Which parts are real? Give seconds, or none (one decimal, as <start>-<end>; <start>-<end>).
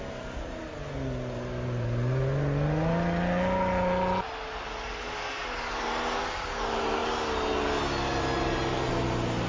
0.0-9.5